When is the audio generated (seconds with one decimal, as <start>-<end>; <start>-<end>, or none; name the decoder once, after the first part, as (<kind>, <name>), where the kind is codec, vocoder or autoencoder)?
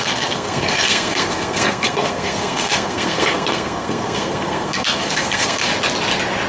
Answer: 0.0-5.6 (codec, SNAC)